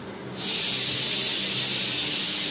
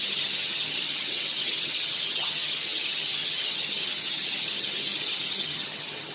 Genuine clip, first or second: first